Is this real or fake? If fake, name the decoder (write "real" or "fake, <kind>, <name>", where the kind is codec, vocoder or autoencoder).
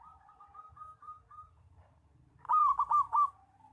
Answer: fake, vocoder, BigVGAN v2